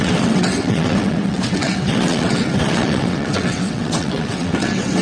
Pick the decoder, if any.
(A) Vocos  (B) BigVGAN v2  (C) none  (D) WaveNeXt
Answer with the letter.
D